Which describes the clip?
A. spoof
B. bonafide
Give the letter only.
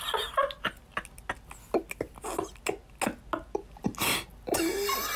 B